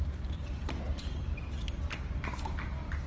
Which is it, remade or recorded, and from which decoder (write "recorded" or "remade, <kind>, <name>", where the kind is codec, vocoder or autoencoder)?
remade, vocoder, BigVGAN v2